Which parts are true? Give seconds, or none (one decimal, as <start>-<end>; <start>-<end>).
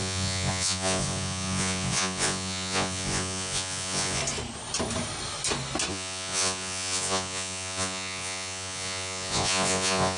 4.2-5.9